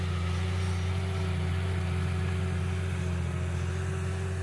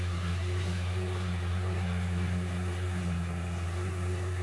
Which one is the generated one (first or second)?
second